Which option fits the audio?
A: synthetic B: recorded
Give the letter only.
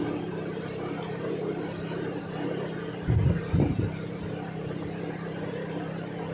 A